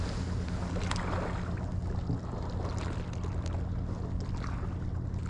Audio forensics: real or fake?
real